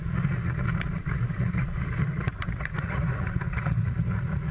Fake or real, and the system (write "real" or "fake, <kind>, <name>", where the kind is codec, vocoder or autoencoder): fake, vocoder, Vocos